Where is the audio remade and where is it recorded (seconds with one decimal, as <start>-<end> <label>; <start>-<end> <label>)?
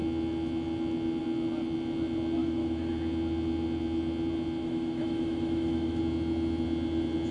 0.0-2.4 recorded; 2.4-2.9 remade; 2.9-4.6 recorded; 4.6-6.0 remade; 6.0-7.3 recorded